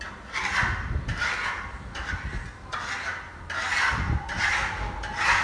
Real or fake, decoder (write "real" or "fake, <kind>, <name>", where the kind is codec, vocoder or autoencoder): real